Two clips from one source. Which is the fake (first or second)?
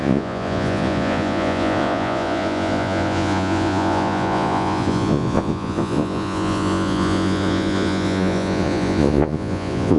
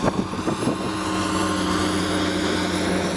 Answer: first